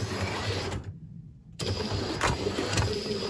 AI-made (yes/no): yes